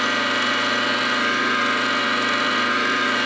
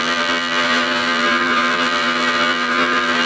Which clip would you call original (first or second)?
first